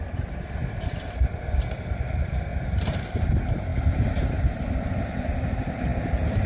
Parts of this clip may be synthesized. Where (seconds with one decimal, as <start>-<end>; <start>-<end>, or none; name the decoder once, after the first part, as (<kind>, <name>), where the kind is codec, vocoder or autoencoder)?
none